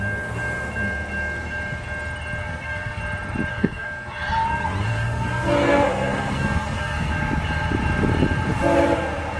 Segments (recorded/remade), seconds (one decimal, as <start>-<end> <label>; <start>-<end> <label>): 0.0-2.4 recorded; 2.4-3.0 remade; 3.0-3.5 recorded; 3.5-4.2 remade; 4.2-4.9 recorded; 4.9-7.1 remade; 7.1-9.4 recorded